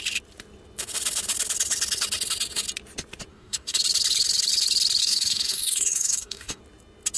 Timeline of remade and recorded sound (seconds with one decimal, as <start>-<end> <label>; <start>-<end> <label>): 0.0-3.3 recorded; 3.3-3.8 remade; 3.8-5.0 recorded; 5.0-6.6 remade; 6.6-7.2 recorded